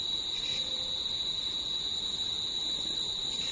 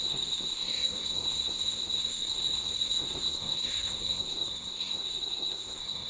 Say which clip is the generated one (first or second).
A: second